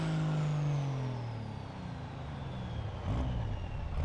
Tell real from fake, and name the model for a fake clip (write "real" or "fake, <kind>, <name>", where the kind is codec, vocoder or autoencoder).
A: real